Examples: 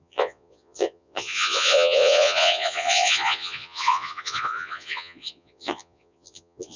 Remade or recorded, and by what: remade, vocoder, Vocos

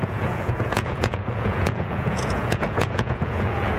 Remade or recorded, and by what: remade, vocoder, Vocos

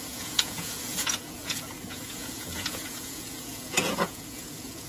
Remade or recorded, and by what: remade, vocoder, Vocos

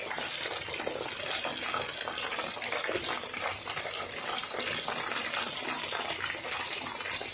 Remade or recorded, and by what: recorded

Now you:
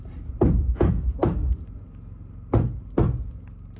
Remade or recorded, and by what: recorded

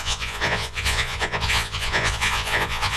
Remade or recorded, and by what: remade, vocoder, Vocos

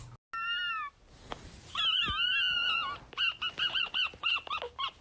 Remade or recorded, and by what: recorded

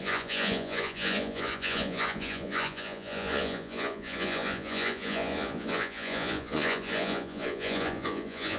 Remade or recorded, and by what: remade, vocoder, Vocos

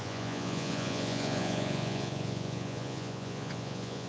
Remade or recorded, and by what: remade, vocoder, Vocos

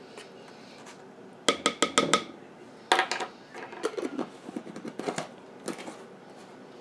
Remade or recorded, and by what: recorded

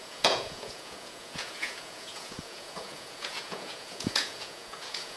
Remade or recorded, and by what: remade, vocoder, Vocos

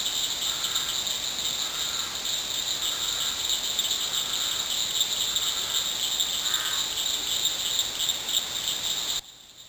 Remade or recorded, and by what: recorded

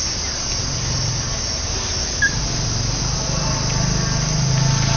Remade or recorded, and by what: recorded